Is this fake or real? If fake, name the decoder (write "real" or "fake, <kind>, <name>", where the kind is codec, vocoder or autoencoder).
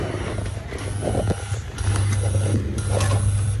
real